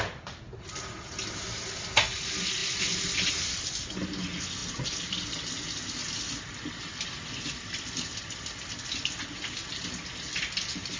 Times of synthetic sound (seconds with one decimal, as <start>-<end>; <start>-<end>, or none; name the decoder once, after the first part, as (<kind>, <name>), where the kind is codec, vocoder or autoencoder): none